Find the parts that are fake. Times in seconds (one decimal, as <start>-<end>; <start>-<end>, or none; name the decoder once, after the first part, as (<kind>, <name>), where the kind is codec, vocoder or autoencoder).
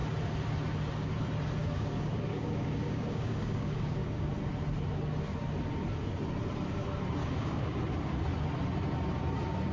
1.6-4.3 (codec, DAC); 7.2-7.8